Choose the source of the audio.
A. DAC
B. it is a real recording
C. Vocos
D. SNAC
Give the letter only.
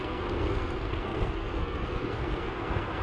D